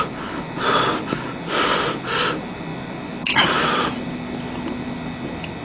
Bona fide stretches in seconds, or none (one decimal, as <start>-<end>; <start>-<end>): 0.0-5.6